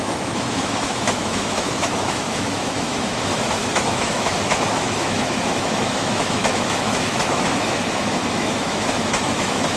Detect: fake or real fake